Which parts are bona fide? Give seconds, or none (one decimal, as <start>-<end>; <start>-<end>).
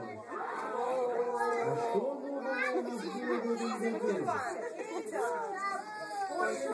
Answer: 0.0-0.4; 1.2-6.7